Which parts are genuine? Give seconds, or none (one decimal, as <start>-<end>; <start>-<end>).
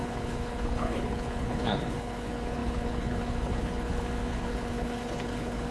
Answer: none